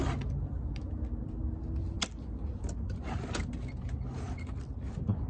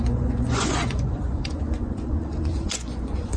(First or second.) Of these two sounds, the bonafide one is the first